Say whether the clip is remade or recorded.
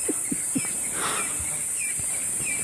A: recorded